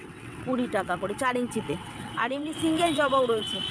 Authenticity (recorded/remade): remade